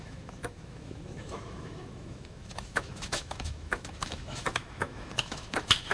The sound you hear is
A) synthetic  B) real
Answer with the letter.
A